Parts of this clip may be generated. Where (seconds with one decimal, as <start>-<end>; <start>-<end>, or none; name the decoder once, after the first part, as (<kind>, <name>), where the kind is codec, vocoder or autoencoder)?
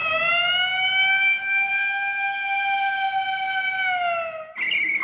none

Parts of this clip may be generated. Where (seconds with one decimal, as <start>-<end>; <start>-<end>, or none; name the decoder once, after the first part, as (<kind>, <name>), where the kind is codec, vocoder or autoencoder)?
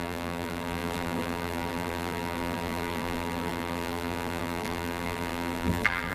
0.0-6.1 (vocoder, BigVGAN v2)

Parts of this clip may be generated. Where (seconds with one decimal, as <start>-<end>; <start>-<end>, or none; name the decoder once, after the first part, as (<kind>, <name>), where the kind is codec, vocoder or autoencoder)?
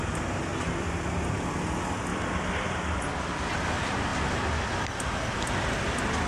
0.5-1.1 (vocoder, BigVGAN v2); 2.1-3.5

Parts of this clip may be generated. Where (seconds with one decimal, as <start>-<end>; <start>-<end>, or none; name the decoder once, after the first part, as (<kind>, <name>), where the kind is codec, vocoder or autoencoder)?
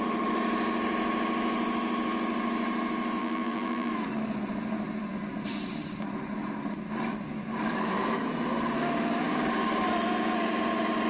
3.2-3.9 (vocoder, BigVGAN v2)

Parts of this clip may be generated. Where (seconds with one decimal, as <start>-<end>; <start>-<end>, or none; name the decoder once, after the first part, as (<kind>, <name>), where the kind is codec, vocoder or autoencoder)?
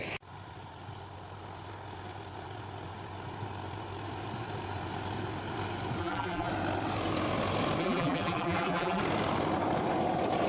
6.0-6.5 (vocoder, BigVGAN v2); 7.8-9.0